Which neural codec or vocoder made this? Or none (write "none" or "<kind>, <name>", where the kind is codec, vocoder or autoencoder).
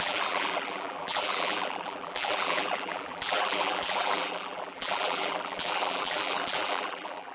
vocoder, BigVGAN v2